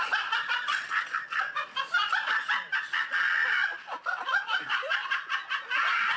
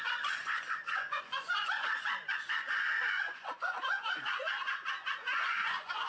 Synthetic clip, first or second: second